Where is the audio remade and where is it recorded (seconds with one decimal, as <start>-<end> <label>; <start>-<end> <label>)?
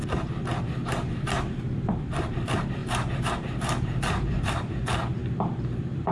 0.0-0.8 remade; 0.8-1.9 recorded; 1.9-2.8 remade; 2.8-3.3 recorded; 3.3-5.2 remade; 5.2-6.1 recorded